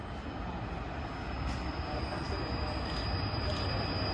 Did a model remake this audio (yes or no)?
no